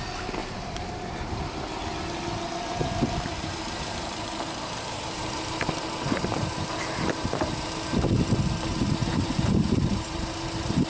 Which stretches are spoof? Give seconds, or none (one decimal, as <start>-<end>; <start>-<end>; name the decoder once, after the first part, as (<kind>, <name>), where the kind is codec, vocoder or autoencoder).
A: 0.4-1.4 (vocoder, BigVGAN v2); 3.3-7.7; 9.0-10.9